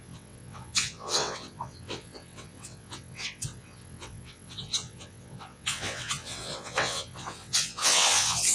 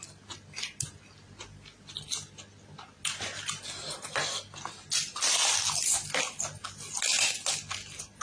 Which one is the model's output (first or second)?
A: first